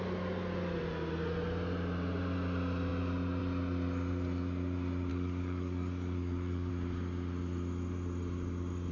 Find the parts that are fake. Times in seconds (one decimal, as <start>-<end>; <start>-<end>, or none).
5.1-6.7